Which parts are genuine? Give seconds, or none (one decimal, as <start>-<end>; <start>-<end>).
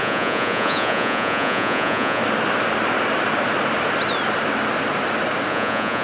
2.2-5.5